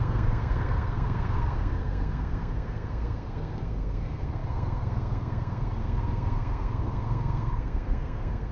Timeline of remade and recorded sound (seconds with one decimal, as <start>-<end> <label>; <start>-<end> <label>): 0.0-8.5 remade